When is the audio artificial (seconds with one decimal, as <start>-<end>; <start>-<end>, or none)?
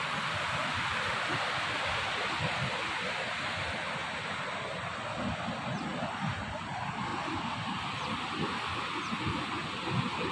0.6-3.2; 5.9-6.5